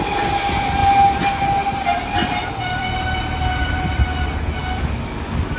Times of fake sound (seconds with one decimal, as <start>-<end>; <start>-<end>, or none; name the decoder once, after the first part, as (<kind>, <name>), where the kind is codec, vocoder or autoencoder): 4.6-5.6 (codec, DAC)